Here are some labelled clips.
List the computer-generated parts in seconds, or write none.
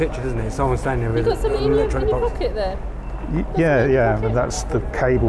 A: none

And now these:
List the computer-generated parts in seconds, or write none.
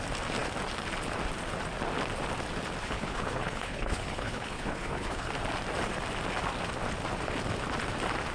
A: 2.8-5.3 (codec, HILCodec)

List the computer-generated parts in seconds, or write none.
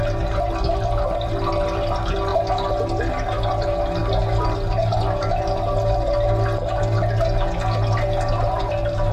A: none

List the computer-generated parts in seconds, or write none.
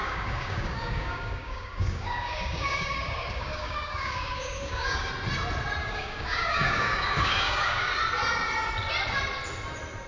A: 0.0-5.1 (codec, DAC); 5.8-7.9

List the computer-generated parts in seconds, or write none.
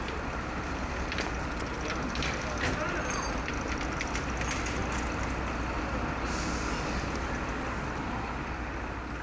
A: none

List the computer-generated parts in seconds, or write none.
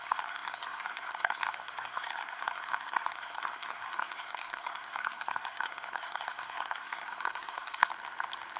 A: 0.0-7.9 (codec, SNAC)